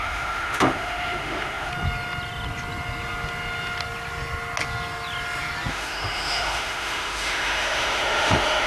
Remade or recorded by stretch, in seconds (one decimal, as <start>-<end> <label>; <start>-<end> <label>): 0.0-1.7 remade; 1.7-5.7 recorded; 5.7-8.7 remade